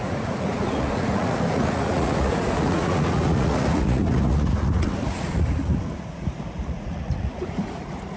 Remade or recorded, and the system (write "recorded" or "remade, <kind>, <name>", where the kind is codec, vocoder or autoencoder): remade, vocoder, Vocos